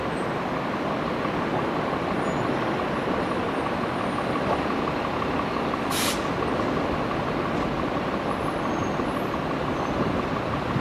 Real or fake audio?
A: real